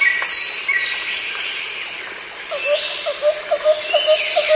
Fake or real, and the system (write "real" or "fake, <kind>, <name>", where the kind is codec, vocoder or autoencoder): real